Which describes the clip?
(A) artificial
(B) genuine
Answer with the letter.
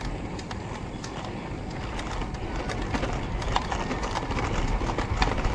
B